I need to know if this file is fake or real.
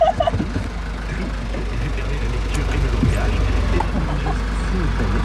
real